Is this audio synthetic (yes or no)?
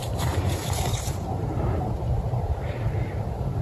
yes